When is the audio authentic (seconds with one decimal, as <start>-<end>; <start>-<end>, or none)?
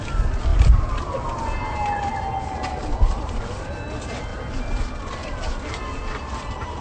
0.0-4.3; 4.8-5.2